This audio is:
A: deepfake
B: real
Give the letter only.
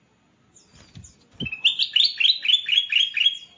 B